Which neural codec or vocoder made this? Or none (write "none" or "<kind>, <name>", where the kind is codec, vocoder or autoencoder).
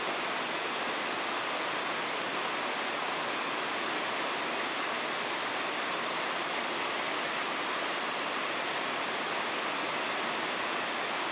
none